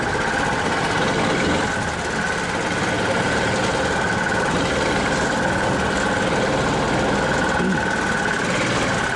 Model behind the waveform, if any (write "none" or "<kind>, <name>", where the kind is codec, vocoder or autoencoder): none